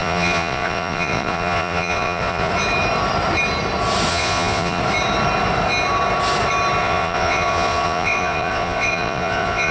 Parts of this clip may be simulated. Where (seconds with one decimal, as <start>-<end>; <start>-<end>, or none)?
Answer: 0.0-2.5; 4.1-4.8; 6.8-9.7

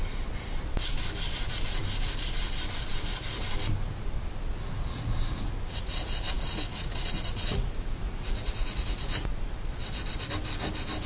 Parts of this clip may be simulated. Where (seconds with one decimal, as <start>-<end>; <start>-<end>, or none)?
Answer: 4.5-9.3

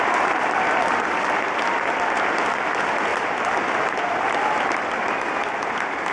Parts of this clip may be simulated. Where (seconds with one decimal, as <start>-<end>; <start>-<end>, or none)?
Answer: none

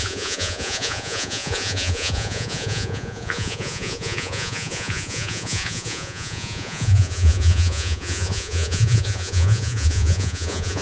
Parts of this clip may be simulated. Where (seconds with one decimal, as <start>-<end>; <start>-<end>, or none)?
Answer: 0.0-10.8